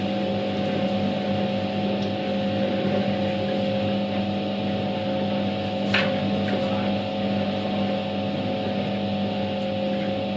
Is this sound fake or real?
real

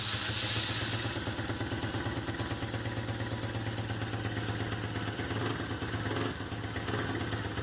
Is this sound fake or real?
real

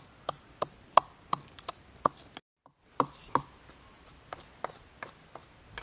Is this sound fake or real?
real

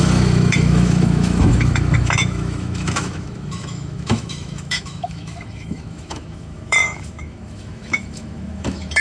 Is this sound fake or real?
fake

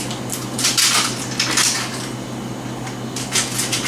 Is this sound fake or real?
real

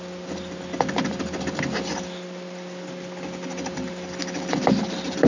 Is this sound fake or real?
real